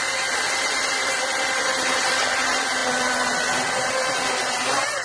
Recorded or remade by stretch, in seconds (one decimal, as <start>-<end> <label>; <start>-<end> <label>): 0.0-2.8 remade; 2.8-3.9 recorded; 3.9-5.0 remade